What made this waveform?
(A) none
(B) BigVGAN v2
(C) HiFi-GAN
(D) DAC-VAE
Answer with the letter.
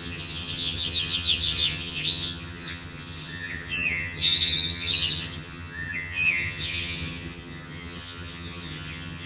C